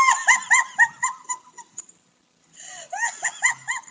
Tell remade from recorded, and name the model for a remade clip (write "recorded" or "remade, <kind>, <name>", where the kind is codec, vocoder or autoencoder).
recorded